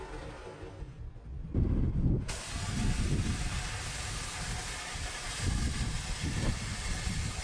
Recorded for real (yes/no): yes